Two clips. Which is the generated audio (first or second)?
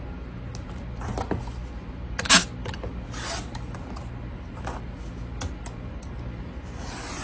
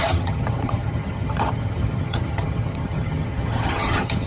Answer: second